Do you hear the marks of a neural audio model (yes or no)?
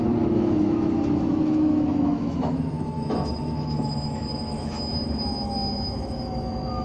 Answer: yes